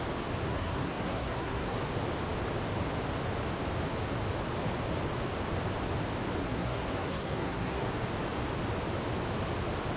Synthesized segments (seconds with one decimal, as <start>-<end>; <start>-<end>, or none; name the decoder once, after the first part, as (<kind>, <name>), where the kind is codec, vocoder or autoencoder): 0.4-1.8 (codec, SNAC); 6.4-7.9